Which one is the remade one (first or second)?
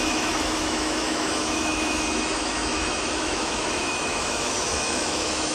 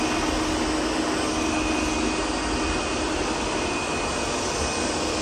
first